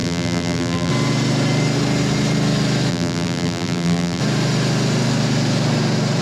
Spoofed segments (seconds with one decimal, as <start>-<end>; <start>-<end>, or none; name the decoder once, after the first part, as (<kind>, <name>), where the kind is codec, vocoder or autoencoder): 0.0-0.9 (vocoder, BigVGAN v2); 2.9-4.2